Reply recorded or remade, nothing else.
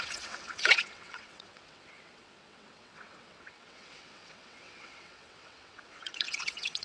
remade